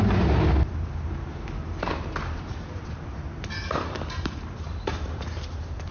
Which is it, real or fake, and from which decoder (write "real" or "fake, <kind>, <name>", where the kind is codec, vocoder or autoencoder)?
fake, vocoder, BigVGAN v2